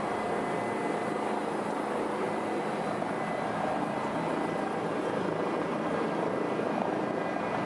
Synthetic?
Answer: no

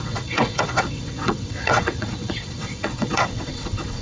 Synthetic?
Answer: yes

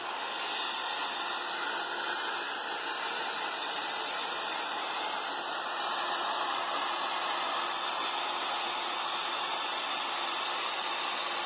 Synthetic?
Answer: no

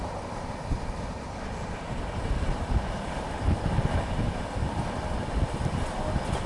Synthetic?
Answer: no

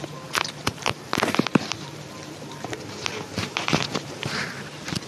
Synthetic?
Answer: yes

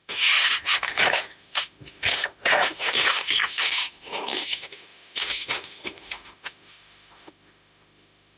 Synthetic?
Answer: yes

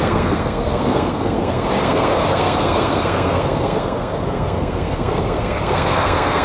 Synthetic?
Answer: yes